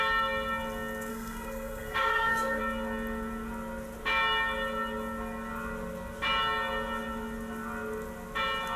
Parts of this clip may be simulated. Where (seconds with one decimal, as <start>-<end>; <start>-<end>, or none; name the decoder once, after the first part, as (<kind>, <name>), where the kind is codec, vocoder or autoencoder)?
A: 1.1-2.6 (codec, SNAC)